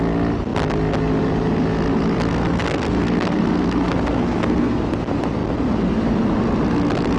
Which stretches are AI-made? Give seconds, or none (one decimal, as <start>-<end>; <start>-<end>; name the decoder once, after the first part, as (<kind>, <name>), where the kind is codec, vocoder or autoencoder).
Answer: 2.3-4.8 (codec, SNAC)